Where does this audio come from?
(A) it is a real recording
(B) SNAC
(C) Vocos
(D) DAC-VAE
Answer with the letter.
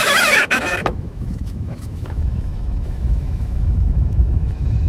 D